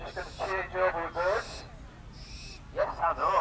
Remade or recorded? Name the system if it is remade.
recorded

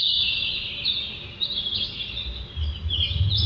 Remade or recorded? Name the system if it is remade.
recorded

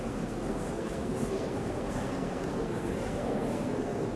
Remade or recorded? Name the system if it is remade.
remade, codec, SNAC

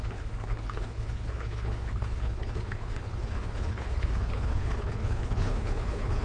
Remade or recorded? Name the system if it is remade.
remade, codec, HILCodec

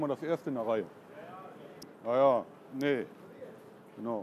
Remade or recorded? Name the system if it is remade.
recorded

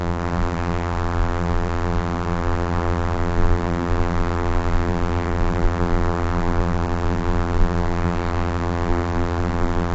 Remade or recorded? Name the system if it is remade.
remade, vocoder, BigVGAN v2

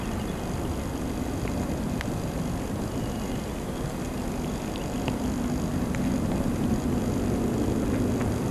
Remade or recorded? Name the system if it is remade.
recorded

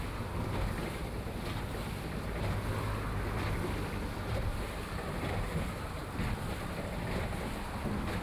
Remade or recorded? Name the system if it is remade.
recorded